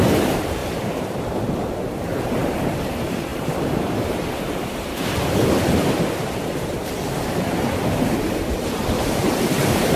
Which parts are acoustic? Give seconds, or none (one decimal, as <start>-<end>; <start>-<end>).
0.6-1.1